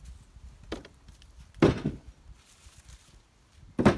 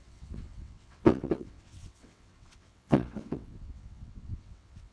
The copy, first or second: second